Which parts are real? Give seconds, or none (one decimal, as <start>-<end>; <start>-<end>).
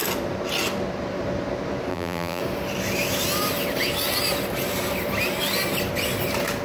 0.0-1.9; 2.4-6.6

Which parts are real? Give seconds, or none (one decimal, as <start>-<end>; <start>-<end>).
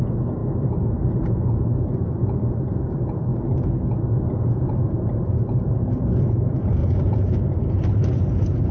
3.3-4.4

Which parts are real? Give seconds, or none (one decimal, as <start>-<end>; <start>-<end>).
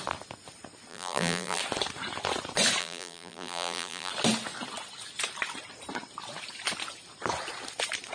0.0-0.9; 1.6-2.8; 4.1-8.1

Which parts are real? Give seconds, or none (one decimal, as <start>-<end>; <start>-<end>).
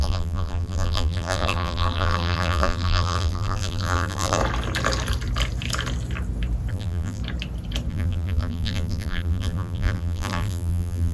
4.4-6.7; 7.2-7.9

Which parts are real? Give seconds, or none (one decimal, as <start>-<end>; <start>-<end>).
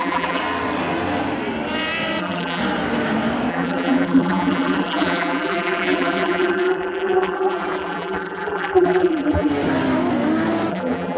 0.4-2.2; 2.6-3.5; 9.5-10.7